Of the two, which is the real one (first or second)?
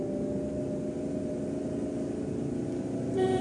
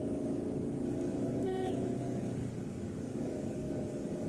first